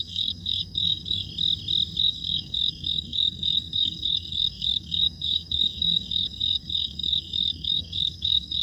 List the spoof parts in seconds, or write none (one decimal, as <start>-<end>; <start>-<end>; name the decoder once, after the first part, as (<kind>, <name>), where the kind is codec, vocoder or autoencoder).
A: 0.0-1.3 (codec, SNAC); 2.0-8.6